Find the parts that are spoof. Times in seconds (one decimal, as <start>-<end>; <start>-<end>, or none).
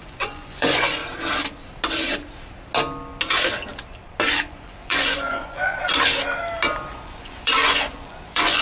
0.0-1.0; 4.5-5.9; 6.9-8.6